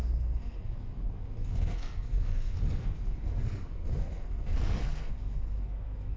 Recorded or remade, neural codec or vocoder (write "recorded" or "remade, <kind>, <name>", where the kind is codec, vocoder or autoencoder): remade, codec, SNAC